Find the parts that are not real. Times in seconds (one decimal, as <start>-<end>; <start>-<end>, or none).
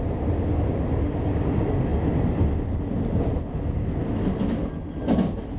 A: none